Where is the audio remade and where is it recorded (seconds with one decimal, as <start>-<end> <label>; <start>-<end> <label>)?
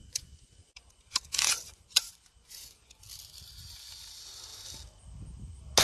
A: 0.0-3.0 remade; 3.0-5.8 recorded